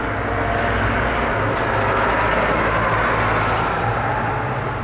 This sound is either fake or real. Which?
real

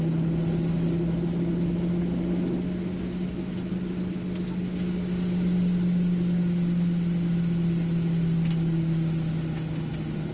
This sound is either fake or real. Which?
real